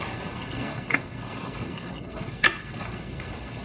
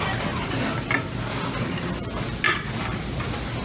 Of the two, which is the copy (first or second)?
first